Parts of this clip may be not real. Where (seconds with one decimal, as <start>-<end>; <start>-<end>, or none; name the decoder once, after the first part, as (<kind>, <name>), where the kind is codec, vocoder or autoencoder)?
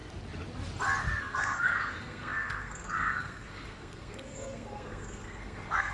1.2-5.9 (codec, SNAC)